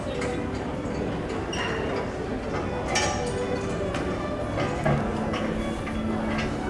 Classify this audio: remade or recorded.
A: recorded